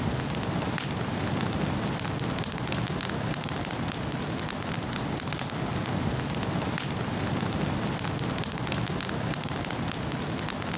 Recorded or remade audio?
recorded